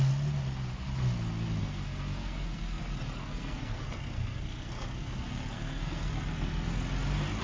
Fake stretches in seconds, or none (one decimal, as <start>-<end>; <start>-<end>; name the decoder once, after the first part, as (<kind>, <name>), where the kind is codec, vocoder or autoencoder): 1.6-2.8 (codec, SNAC); 3.2-6.8